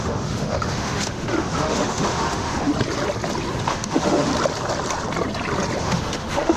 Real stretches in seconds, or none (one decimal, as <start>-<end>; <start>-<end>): 2.7-3.6; 4.3-5.8